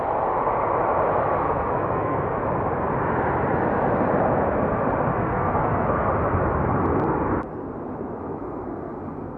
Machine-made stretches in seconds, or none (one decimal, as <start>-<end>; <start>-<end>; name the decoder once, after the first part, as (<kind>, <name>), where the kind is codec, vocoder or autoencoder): 1.4-2.4 (codec, SNAC); 5.1-6.1; 8.2-9.4

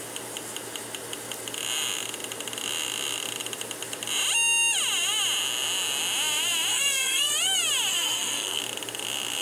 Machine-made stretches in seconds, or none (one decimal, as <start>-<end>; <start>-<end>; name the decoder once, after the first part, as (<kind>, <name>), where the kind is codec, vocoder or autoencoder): 6.7-7.3 (codec, SNAC); 7.9-8.6

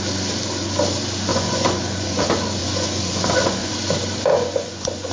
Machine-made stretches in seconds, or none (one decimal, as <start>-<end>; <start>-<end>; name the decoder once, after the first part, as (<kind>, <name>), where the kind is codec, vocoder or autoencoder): 1.3-2.2 (vocoder, Vocos); 2.6-3.7; 4.3-5.1

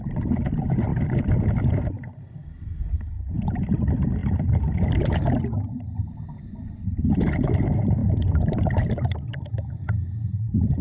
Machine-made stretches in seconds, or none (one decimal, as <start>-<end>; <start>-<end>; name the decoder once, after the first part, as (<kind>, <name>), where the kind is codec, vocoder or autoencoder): none

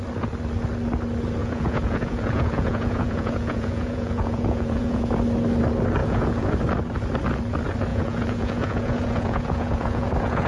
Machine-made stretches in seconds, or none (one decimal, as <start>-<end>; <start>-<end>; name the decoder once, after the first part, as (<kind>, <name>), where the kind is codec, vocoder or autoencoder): 1.4-5.1 (vocoder, Vocos); 6.0-6.5; 7.9-10.5

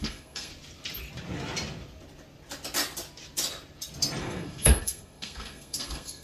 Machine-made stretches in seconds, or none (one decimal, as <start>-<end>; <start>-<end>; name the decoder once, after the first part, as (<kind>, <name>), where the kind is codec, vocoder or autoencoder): 0.0-0.5 (codec, SNAC); 4.2-6.2